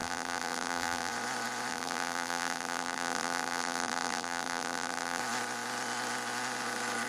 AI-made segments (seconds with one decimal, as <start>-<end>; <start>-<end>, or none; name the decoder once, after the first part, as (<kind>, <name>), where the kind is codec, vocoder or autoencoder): 0.0-1.1 (vocoder, BigVGAN v2); 1.7-5.2